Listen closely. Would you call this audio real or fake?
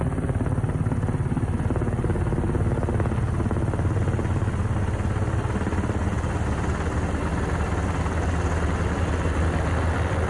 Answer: real